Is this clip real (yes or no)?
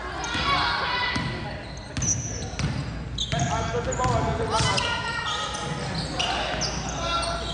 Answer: yes